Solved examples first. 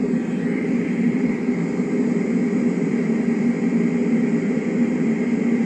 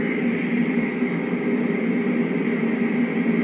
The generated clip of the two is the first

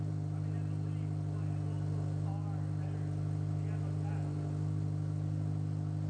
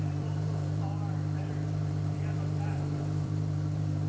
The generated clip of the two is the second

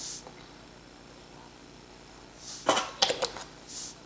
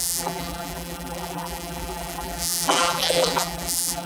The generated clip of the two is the second